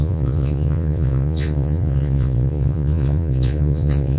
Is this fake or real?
fake